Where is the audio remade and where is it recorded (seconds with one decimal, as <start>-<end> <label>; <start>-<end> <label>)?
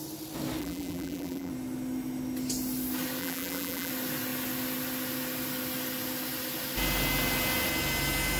0.0-0.6 recorded; 0.6-1.5 remade; 1.5-3.2 recorded; 3.2-3.9 remade; 3.9-8.4 recorded